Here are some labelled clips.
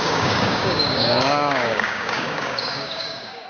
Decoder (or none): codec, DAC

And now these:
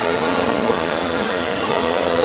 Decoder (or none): vocoder, Vocos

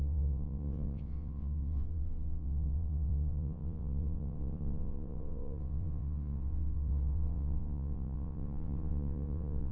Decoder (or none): vocoder, WaveNeXt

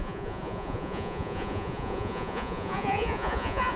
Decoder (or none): vocoder, Vocos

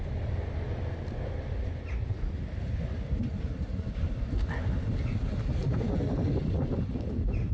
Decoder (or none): none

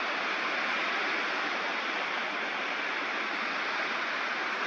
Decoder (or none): none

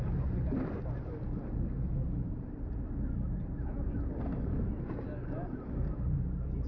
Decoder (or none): none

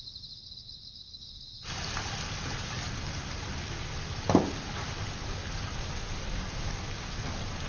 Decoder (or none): none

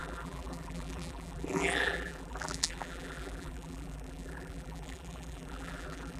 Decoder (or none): vocoder, BigVGAN v2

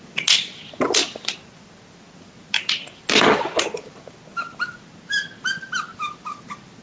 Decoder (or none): none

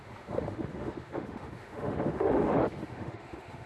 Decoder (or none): autoencoder, DAC-VAE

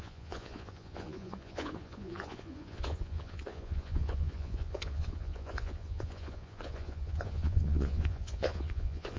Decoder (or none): vocoder, Vocos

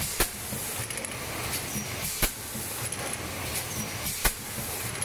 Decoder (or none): none